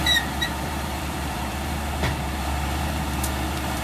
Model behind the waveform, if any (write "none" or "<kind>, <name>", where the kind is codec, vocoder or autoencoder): vocoder, BigVGAN v2